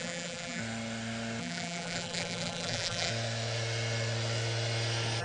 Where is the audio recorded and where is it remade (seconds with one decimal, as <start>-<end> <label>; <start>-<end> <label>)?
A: 0.0-0.6 remade; 0.6-1.4 recorded; 1.4-3.1 remade; 3.1-5.2 recorded